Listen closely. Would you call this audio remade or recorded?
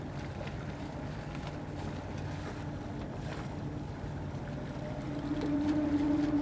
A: recorded